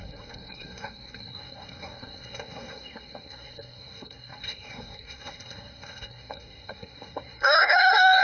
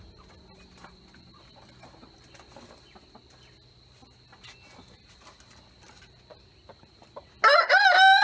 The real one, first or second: second